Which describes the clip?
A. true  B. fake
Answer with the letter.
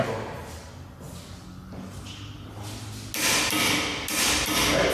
A